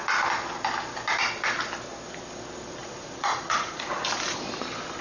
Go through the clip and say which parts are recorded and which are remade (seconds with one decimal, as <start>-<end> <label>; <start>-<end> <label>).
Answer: 0.0-2.8 recorded; 2.8-4.0 remade; 4.0-5.0 recorded